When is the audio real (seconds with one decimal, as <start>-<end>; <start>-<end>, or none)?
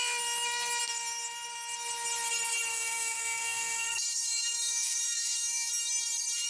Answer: 0.0-2.7; 5.7-6.5